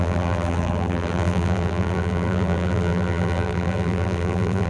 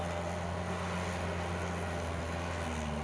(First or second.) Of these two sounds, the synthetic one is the first